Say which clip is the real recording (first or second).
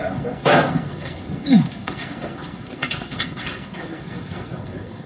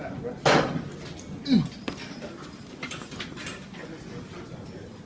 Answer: second